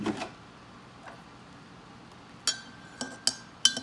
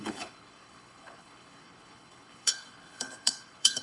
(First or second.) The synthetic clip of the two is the second